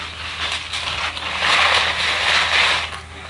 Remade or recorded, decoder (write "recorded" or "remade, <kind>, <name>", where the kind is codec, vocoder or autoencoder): recorded